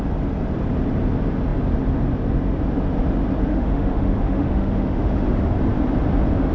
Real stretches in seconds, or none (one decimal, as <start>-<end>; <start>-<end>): 0.0-3.5; 5.5-6.5